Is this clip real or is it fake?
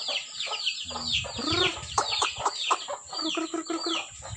real